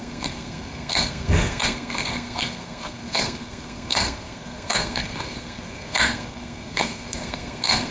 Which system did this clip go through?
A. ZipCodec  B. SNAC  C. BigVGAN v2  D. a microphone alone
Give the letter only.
B